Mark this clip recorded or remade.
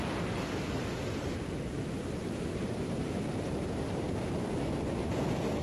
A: recorded